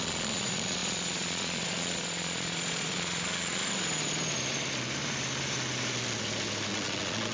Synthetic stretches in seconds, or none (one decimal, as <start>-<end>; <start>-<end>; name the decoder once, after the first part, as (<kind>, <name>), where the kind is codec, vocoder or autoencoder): 0.0-3.6 (vocoder, Vocos); 6.7-7.3